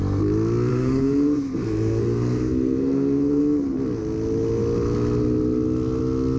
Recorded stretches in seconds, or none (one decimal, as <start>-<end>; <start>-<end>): 0.0-0.7; 3.4-6.4